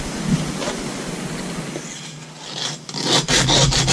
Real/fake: real